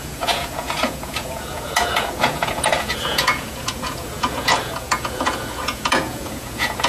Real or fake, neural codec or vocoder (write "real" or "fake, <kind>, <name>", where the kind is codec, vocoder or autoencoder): fake, vocoder, Vocos